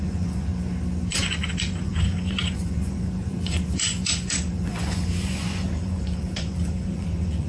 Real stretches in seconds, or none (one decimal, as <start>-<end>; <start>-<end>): 0.5-1.1